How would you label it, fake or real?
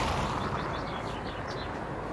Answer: real